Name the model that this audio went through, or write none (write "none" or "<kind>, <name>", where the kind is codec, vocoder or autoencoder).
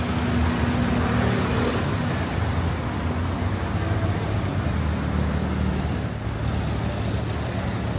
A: none